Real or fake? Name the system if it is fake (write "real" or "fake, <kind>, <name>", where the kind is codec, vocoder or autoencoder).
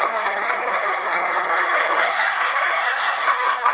fake, codec, SNAC